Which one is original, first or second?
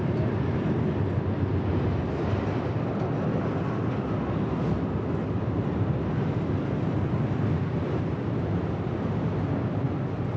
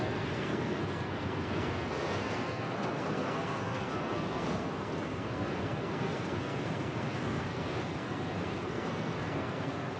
first